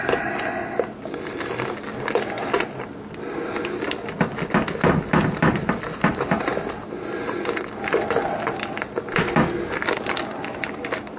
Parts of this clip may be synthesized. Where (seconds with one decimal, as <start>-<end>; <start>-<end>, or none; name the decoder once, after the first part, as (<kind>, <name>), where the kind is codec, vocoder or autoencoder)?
5.2-6.5 (vocoder, BigVGAN v2)